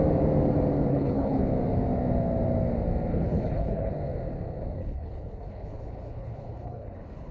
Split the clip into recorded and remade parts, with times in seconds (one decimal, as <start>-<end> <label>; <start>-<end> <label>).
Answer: 0.0-0.9 recorded; 0.9-1.4 remade; 1.4-3.1 recorded; 3.1-3.9 remade; 3.9-4.8 recorded; 4.8-7.3 remade